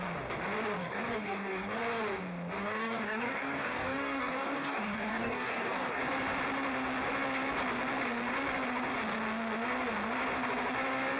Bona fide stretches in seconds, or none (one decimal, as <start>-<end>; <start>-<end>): 0.0-0.8; 1.8-2.6; 6.0-11.2